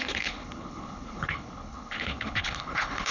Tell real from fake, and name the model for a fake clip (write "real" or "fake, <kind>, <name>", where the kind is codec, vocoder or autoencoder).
fake, codec, HILCodec